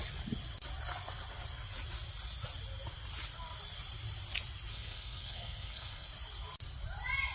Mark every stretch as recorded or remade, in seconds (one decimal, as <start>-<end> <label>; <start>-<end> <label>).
0.0-4.7 recorded; 4.7-6.1 remade; 6.1-7.3 recorded